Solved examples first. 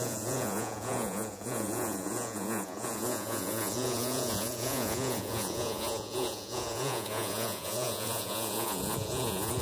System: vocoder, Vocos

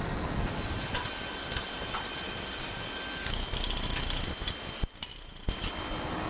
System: none